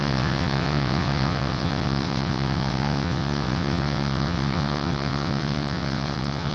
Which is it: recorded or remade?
remade